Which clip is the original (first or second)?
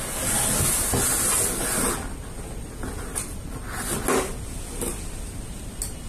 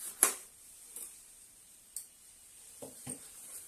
first